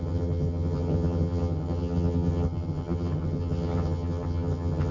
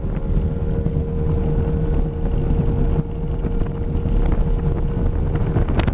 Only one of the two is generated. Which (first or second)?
first